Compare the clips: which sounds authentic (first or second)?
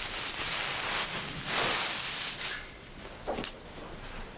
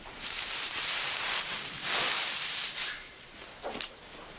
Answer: first